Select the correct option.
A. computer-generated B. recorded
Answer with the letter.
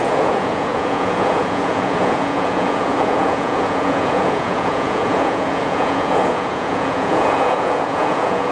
A